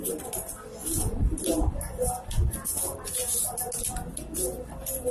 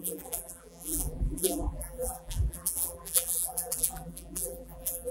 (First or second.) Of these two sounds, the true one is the first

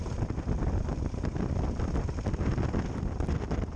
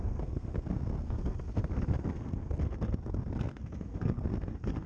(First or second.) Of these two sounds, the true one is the first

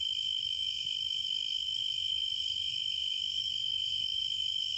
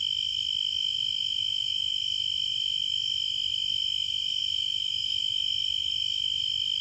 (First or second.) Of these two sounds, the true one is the second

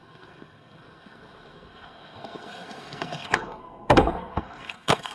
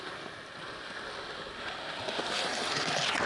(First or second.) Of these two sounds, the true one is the second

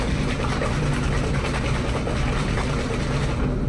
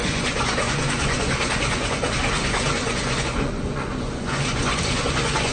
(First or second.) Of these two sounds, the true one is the first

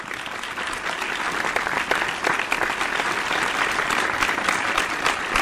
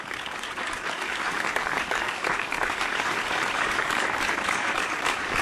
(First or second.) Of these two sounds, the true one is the first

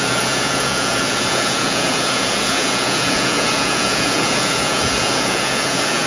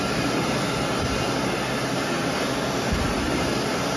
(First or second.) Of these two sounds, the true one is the second